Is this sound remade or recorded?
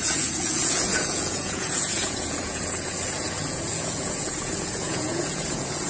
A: remade